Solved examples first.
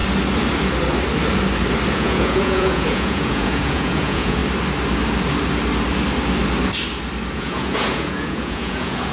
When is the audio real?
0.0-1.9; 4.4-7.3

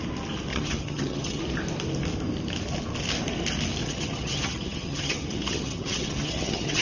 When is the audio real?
0.0-0.5; 1.4-3.8

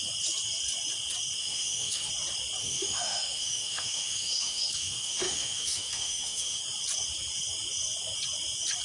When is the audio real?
0.0-1.4; 2.1-2.6; 6.6-8.8

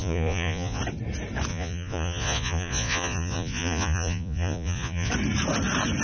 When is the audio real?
0.8-1.5; 5.1-6.0

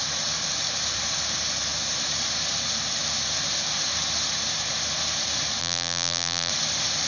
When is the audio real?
0.0-5.6; 6.5-7.1

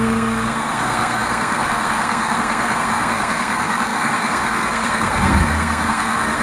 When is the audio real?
none